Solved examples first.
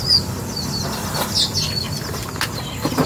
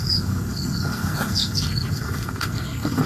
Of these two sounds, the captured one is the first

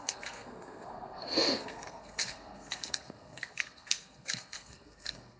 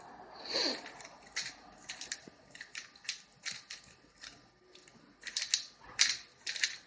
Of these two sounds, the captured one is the second